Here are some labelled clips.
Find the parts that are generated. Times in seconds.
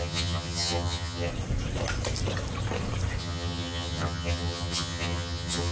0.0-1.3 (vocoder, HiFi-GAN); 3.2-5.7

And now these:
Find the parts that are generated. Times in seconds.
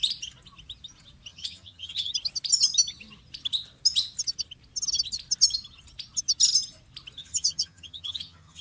1.3-2.1 (vocoder, HiFi-GAN); 7.2-8.6